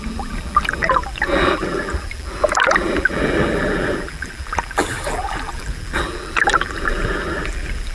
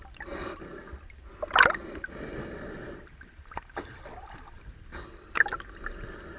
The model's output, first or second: first